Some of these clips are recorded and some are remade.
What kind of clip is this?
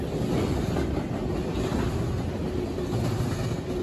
recorded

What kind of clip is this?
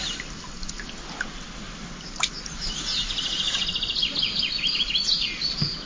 recorded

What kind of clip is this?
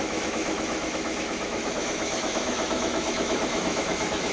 remade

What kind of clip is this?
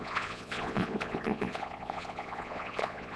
remade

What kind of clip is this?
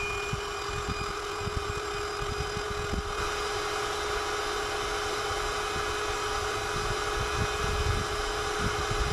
recorded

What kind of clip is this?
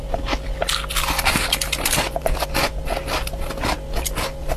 recorded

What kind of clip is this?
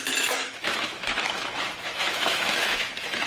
remade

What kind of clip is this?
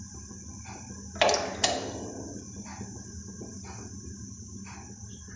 recorded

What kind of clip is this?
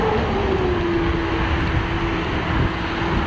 recorded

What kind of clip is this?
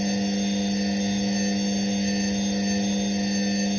recorded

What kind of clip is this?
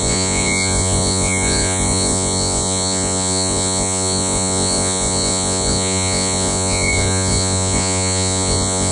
remade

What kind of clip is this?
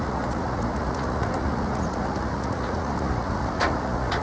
remade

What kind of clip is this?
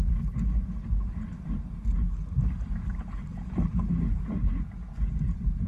recorded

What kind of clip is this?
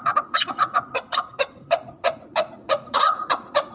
remade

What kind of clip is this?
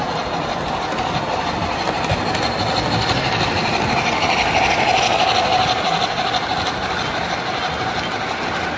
recorded